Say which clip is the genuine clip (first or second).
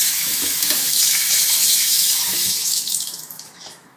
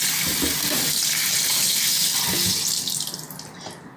second